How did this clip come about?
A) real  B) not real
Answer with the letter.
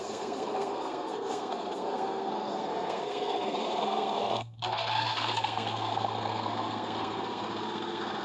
B